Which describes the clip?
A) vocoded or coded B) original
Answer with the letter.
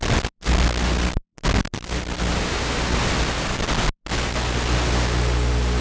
B